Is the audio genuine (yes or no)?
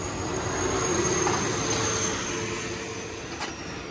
yes